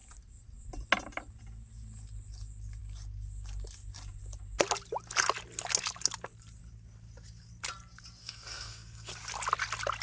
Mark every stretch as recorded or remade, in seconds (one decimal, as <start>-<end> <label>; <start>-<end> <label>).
0.0-8.2 recorded; 8.2-9.1 remade; 9.1-10.0 recorded

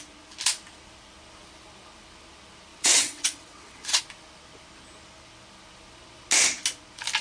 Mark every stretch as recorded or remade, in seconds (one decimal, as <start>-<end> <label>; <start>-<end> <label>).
0.0-2.7 recorded; 2.7-4.0 remade; 4.0-7.2 recorded

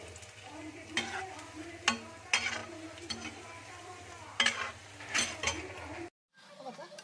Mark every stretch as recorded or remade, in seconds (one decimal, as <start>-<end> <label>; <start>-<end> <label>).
0.0-7.0 recorded